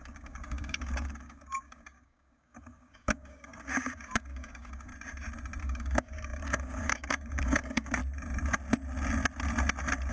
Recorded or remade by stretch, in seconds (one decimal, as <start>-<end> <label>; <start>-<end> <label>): 0.0-4.9 remade; 4.9-5.6 recorded; 5.6-8.0 remade; 8.0-10.1 recorded